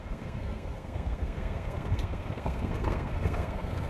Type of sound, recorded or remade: remade